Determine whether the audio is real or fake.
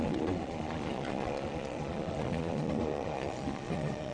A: fake